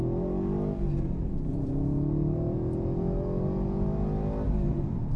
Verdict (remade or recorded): recorded